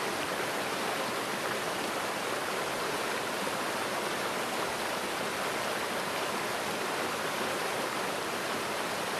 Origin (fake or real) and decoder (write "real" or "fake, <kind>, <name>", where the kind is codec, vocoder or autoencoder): real